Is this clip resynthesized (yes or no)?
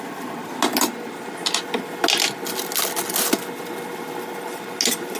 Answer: no